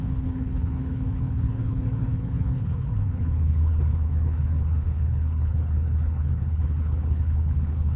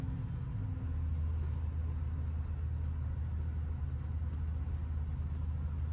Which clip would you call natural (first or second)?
second